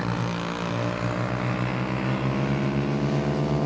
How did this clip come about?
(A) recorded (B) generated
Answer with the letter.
A